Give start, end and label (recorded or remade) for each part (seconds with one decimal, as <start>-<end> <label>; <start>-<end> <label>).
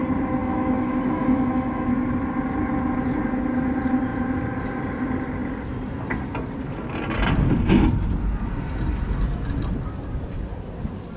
0.0-0.4 recorded; 0.4-1.9 remade; 1.9-11.2 recorded